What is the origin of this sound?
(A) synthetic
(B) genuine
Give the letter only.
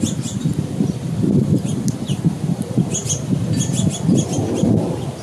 B